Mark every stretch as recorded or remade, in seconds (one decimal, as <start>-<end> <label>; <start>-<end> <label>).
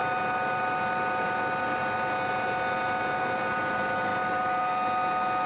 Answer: 0.0-5.5 recorded